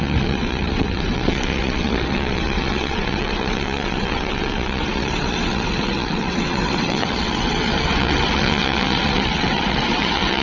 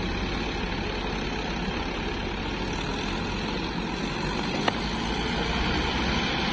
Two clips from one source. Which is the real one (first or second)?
second